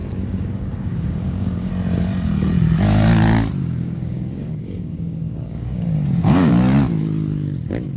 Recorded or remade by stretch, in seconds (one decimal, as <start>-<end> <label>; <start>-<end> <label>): 0.0-1.7 remade; 1.7-3.6 recorded; 3.6-6.5 remade; 6.5-8.0 recorded

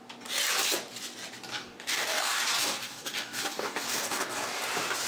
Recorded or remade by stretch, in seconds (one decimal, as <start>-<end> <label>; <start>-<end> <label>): 0.0-1.5 recorded; 1.5-4.6 remade; 4.6-5.1 recorded

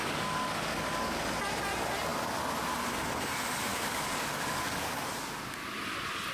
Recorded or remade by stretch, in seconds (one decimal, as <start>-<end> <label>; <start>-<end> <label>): 0.0-1.2 remade; 1.2-3.7 recorded; 3.7-5.1 remade; 5.1-6.3 recorded

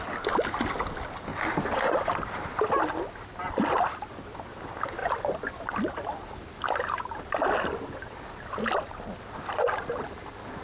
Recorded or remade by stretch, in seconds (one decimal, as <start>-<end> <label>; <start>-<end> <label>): 0.0-10.6 recorded

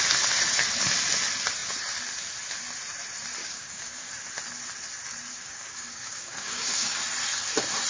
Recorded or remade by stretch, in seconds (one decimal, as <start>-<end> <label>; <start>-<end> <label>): 0.0-3.4 recorded; 3.4-4.1 remade; 4.1-5.3 recorded; 5.3-7.0 remade; 7.0-7.9 recorded

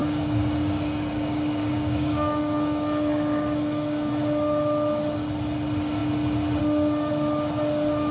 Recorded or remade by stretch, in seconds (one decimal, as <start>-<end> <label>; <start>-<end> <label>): 0.0-4.1 remade; 4.1-8.1 recorded

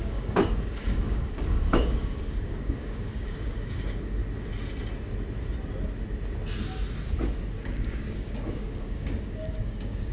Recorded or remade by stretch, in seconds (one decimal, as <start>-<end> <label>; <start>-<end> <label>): 0.0-4.2 remade; 4.2-7.6 recorded; 7.6-10.1 remade

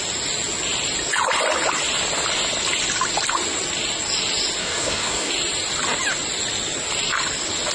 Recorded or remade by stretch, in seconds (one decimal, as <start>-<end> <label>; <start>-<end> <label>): 0.0-4.6 recorded; 4.6-5.3 remade; 5.3-7.7 recorded